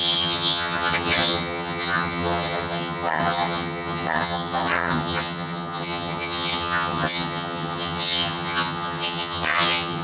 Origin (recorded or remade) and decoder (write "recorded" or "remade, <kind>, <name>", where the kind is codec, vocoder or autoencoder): remade, vocoder, HiFi-GAN